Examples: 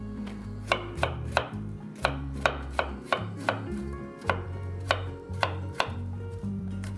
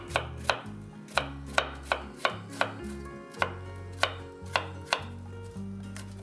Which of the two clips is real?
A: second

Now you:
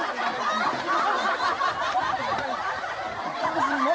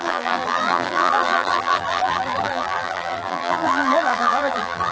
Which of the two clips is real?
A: first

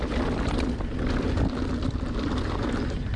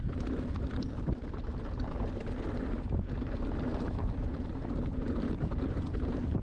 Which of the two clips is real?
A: first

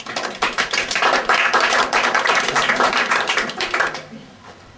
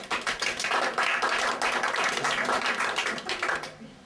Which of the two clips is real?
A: second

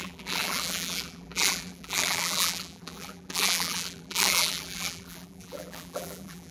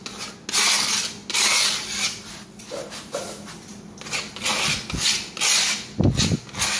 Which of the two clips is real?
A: second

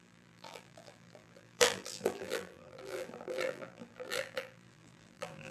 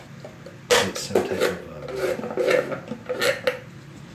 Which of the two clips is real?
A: second